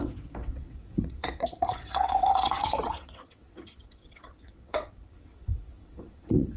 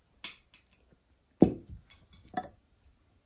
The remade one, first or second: first